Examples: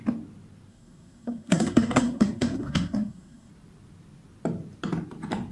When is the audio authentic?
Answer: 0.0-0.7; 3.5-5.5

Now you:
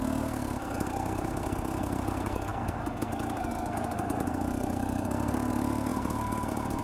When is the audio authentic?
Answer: none